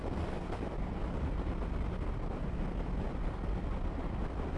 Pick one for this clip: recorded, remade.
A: recorded